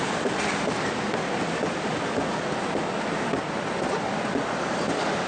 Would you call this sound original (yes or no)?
yes